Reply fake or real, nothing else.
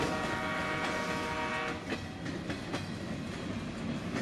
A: real